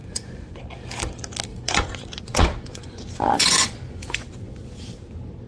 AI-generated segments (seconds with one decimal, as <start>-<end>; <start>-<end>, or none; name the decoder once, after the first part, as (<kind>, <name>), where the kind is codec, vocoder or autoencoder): 0.0-0.6 (vocoder, Vocos); 1.5-4.8